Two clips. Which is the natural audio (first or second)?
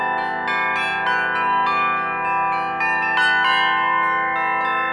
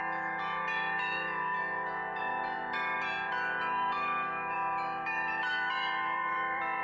first